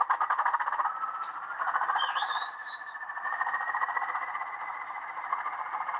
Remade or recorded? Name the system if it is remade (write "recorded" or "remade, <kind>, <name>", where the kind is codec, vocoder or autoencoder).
recorded